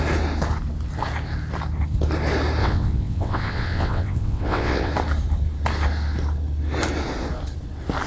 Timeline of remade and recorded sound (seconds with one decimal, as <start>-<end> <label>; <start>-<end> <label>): 0.0-2.6 recorded; 2.6-4.9 remade; 4.9-8.1 recorded